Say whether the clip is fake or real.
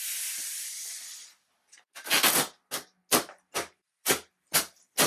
real